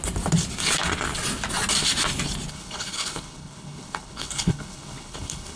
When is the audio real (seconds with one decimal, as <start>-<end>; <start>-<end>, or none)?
0.0-2.5